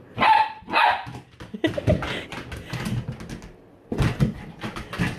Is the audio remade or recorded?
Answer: recorded